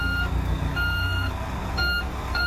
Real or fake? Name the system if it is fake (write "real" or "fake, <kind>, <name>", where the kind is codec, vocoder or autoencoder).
fake, codec, SNAC